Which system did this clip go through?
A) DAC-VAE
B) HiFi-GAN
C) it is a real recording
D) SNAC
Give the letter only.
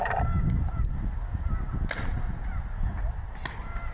C